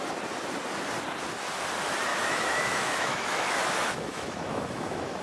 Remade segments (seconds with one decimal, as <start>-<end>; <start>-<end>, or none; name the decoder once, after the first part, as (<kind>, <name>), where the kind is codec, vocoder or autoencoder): 2.1-5.2 (autoencoder, DAC-VAE)